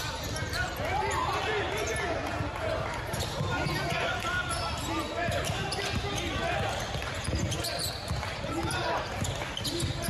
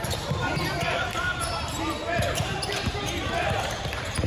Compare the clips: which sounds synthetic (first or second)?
second